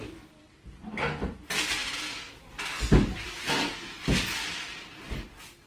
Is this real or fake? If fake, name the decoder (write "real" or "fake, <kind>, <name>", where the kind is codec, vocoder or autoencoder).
real